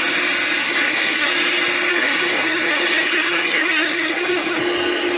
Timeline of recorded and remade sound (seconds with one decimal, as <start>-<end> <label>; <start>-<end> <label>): 0.0-0.6 recorded; 0.6-1.3 remade; 1.3-1.9 recorded; 1.9-4.6 remade; 4.6-5.2 recorded